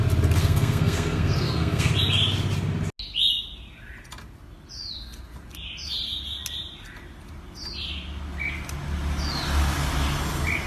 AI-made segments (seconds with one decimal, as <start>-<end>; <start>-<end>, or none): 0.4-1.9

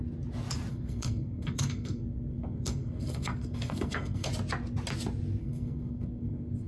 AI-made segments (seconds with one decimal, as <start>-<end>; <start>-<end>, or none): 0.7-4.3; 5.4-6.7

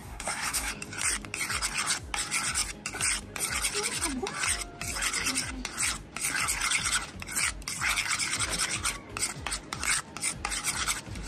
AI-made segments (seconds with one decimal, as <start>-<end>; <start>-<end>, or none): 0.0-0.7

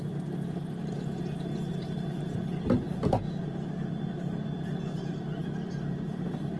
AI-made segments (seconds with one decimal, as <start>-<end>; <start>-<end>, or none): none